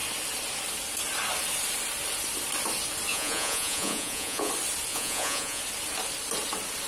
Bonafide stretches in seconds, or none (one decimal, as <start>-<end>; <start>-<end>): 0.0-3.1; 4.5-4.9; 5.6-6.9